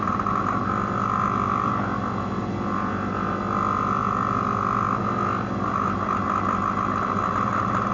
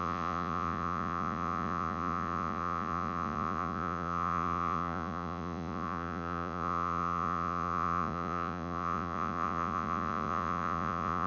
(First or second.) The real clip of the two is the first